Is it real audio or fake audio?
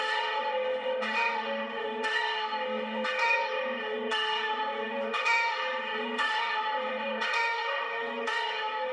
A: fake